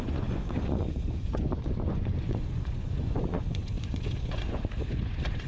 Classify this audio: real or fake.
fake